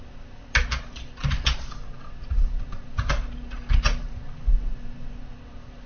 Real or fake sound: real